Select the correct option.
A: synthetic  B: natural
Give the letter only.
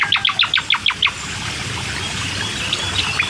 B